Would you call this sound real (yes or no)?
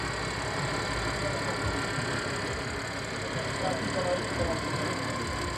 yes